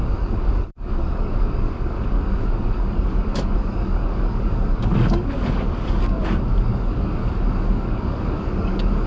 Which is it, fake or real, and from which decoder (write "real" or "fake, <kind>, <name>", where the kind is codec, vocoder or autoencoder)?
fake, codec, DAC